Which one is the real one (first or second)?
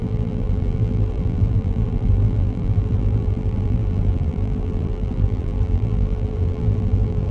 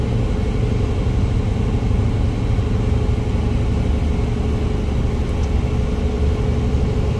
second